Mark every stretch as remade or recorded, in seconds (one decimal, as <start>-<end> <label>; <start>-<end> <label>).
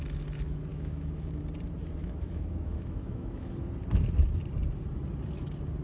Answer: 0.0-0.7 recorded; 0.7-1.4 remade; 1.4-2.0 recorded; 2.0-3.5 remade; 3.5-5.8 recorded